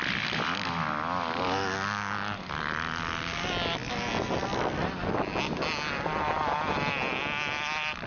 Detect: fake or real real